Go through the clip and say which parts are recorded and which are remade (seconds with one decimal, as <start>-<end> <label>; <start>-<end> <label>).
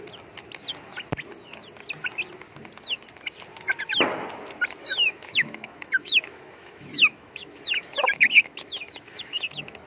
0.0-4.8 recorded; 4.8-9.5 remade; 9.5-9.9 recorded